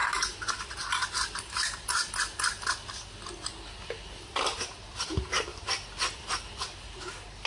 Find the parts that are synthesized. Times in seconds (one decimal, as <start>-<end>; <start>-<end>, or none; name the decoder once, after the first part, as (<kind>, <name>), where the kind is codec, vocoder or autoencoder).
none